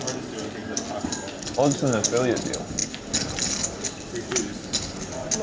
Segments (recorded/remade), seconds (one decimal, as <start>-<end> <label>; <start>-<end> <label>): 0.0-5.4 recorded